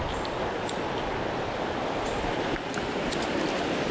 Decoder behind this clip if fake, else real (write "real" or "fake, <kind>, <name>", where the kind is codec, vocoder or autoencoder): real